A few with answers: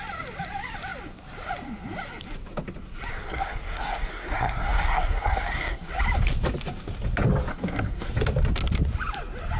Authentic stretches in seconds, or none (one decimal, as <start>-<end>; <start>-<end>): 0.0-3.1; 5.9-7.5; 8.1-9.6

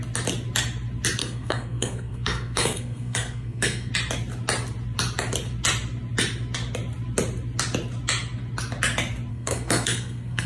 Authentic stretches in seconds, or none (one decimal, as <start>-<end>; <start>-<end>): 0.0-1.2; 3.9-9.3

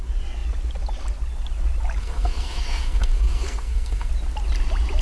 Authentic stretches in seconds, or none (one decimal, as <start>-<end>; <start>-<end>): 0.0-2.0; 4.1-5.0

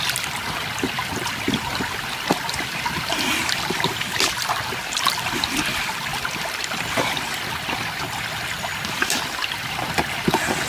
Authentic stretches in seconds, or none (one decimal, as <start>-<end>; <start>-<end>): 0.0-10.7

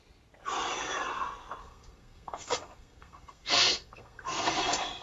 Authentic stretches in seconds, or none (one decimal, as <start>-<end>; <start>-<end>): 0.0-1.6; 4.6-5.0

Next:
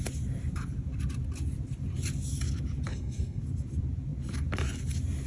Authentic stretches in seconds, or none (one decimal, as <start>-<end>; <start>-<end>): 0.0-2.9; 3.4-5.3

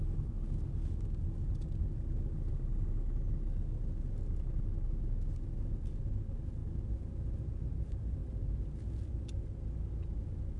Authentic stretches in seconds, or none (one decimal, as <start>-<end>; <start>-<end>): 0.0-10.6